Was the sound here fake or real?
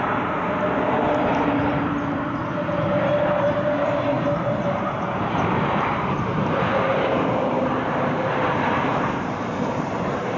fake